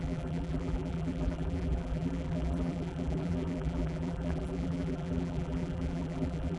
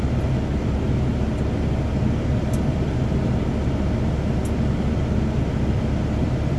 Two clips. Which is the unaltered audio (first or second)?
second